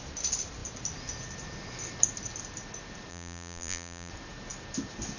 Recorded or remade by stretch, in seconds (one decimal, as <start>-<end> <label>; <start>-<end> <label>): 0.0-3.1 recorded; 3.1-4.1 remade; 4.1-5.2 recorded